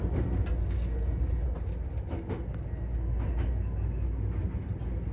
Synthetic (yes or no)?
no